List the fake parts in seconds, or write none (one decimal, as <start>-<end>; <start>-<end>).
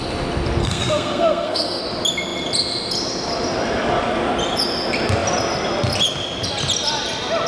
0.6-1.8